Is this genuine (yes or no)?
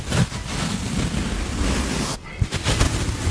yes